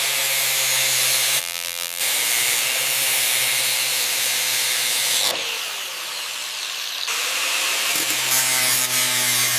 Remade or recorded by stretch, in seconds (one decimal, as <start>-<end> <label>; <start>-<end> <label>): 0.0-1.4 recorded; 1.4-2.0 remade; 2.0-9.6 recorded